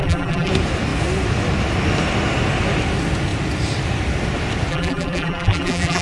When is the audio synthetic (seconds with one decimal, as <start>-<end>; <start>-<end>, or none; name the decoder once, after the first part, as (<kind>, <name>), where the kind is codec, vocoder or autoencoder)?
0.0-0.5 (vocoder, BigVGAN v2); 4.7-6.0